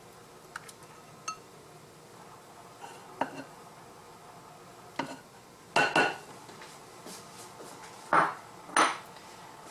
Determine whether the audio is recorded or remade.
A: recorded